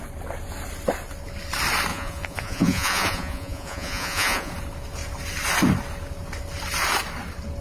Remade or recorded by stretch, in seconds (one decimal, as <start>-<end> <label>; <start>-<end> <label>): 0.0-1.9 recorded; 1.9-4.5 remade; 4.5-7.6 recorded